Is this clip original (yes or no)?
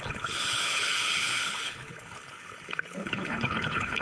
no